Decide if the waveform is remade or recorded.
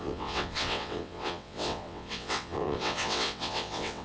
remade